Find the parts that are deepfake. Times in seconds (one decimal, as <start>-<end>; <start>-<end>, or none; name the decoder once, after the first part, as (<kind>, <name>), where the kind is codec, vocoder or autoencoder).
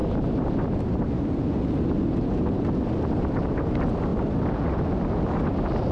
none